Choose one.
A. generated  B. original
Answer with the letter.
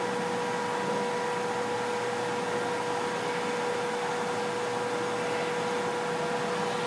B